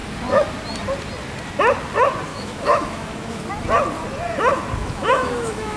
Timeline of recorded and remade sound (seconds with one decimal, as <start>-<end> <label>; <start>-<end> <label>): 0.0-2.3 recorded; 2.3-3.4 remade; 3.4-4.8 recorded; 4.8-5.8 remade